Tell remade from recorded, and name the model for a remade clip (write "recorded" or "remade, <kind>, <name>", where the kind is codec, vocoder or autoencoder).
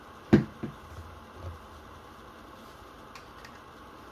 recorded